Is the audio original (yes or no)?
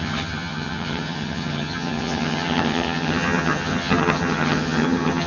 no